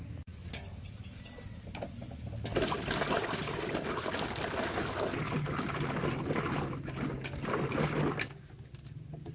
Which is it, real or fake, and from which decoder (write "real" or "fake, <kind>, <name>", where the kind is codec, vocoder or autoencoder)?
real